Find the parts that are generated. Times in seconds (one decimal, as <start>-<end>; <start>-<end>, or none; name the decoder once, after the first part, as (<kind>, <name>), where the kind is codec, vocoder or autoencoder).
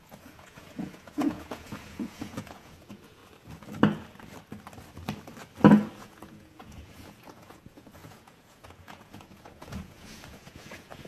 0.0-3.2 (vocoder, Vocos); 6.0-11.1